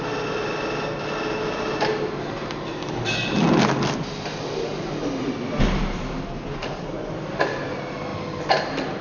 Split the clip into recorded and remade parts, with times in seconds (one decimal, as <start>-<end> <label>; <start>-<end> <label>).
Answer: 0.0-9.0 recorded